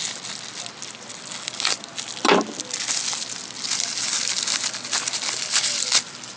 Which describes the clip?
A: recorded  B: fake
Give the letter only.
A